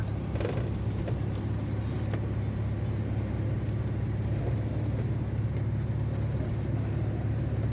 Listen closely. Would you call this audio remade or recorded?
recorded